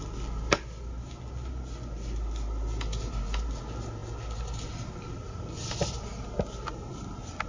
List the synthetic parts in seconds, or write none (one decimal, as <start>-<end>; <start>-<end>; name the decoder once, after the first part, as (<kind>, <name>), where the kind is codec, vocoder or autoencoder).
none